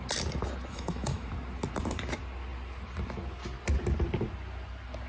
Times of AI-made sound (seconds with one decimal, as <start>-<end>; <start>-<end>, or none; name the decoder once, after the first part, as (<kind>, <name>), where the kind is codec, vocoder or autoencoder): 0.7-1.3 (autoencoder, DAC-VAE)

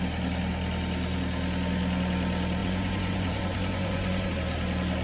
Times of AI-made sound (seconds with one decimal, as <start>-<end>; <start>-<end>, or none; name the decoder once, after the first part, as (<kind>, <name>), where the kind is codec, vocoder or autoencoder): 2.6-4.3 (vocoder, Vocos)

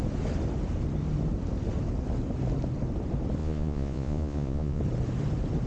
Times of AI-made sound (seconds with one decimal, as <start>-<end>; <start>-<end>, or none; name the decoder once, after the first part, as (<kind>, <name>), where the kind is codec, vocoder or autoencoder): 3.4-4.8 (vocoder, Vocos)

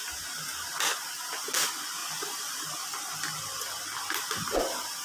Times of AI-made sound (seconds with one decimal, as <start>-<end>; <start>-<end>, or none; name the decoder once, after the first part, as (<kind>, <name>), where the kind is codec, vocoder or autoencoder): 2.0-3.6 (vocoder, BigVGAN v2)